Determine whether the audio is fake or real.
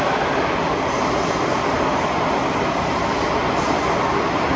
real